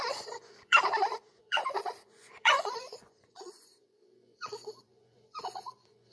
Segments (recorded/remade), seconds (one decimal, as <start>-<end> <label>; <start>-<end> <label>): 0.0-6.1 remade